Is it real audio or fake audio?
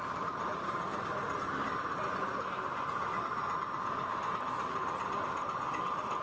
real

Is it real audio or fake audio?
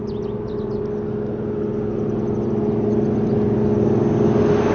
real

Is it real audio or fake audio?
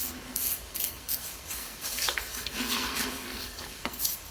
fake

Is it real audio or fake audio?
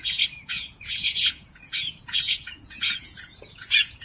fake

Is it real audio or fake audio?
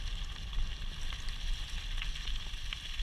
real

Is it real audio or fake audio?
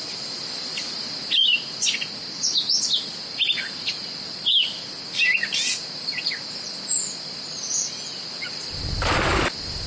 real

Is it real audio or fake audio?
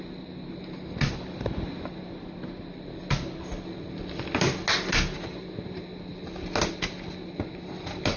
real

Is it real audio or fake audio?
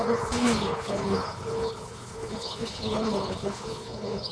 fake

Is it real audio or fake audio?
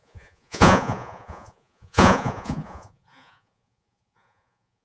fake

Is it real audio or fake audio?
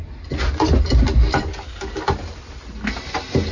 real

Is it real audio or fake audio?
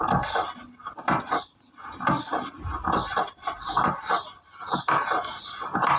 real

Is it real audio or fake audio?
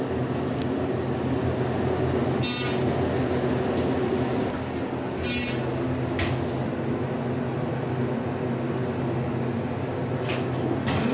real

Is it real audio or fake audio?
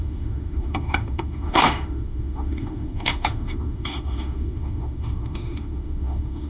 fake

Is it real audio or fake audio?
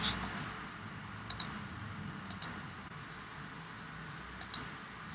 real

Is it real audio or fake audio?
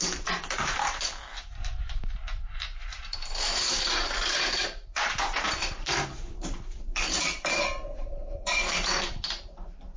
fake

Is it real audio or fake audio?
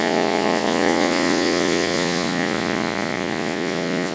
fake